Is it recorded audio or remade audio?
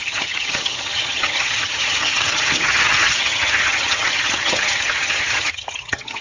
remade